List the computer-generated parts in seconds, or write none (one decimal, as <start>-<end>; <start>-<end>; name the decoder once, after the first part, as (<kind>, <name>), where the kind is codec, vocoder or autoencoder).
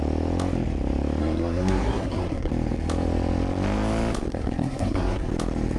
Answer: 1.2-2.5 (codec, SNAC); 4.3-5.3